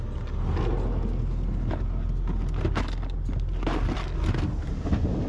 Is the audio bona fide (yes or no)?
yes